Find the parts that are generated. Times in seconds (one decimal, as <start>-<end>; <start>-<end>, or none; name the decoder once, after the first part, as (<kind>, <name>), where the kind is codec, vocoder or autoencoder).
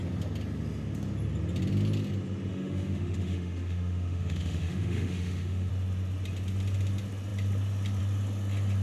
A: 2.5-5.7 (autoencoder, DAC-VAE)